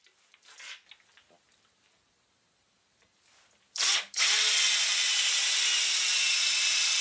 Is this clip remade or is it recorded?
recorded